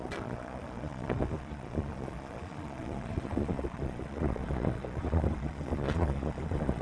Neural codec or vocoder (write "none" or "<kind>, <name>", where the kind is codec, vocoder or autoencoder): vocoder, Vocos